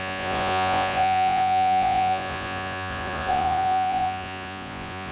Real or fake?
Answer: fake